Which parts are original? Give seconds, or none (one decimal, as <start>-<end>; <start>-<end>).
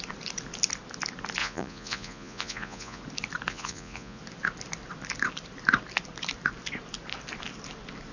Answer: 0.0-1.4; 3.0-3.5; 4.2-8.1